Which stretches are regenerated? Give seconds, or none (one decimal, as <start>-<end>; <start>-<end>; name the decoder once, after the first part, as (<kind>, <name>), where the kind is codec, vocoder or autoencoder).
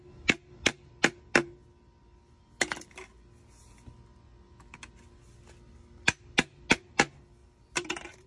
7.4-8.3 (vocoder, BigVGAN v2)